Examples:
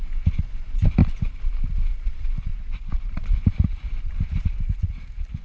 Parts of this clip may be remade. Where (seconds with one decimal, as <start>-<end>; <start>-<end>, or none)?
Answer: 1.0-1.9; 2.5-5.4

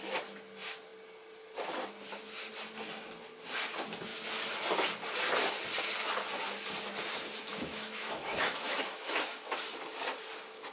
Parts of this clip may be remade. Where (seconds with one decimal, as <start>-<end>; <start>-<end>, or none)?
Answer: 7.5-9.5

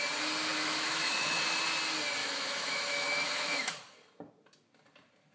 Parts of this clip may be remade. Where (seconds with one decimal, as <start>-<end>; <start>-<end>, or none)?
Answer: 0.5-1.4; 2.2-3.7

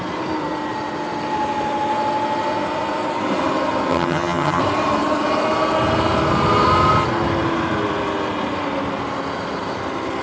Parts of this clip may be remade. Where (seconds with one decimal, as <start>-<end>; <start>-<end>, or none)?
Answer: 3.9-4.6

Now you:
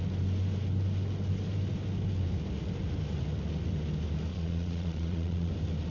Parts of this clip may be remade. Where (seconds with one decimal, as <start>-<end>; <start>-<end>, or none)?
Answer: 4.3-5.5